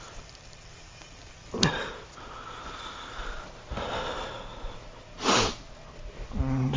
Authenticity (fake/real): real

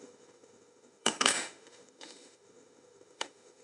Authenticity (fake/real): fake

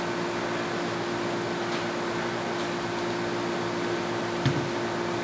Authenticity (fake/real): real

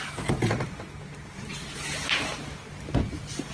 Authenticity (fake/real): real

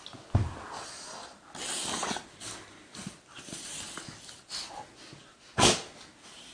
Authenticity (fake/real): real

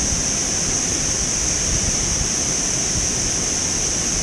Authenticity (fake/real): real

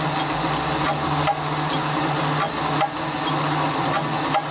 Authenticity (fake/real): real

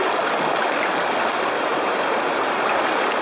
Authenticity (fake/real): real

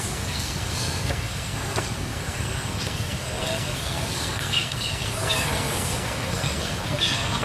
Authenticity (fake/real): fake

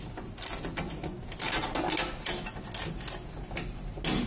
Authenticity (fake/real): real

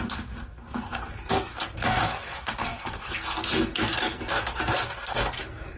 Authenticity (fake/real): fake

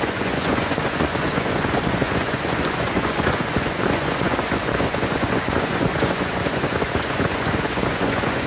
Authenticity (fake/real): fake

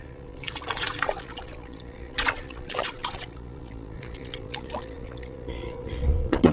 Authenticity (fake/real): fake